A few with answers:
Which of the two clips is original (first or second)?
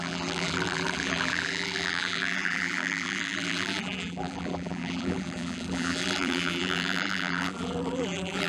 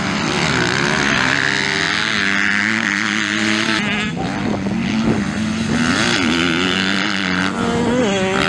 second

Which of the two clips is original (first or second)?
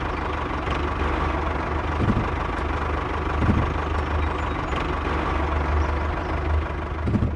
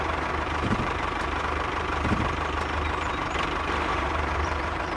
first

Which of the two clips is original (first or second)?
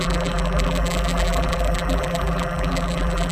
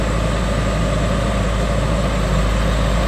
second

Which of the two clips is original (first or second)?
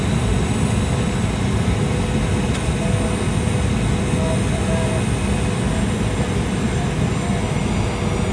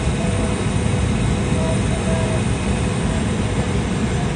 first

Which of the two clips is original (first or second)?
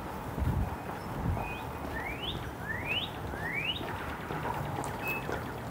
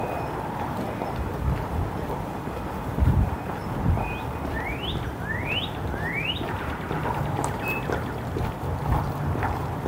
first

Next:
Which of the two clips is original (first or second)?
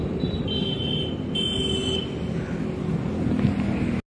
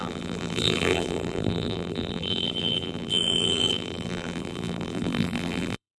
first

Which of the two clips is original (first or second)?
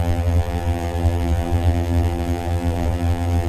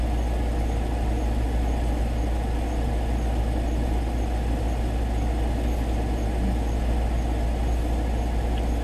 second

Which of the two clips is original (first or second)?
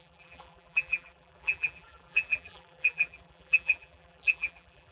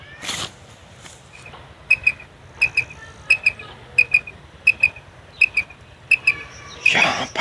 second